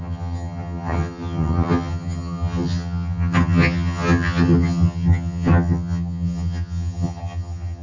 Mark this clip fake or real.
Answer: fake